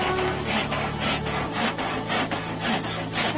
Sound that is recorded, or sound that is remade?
recorded